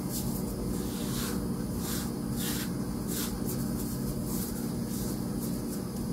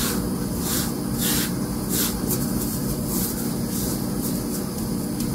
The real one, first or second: first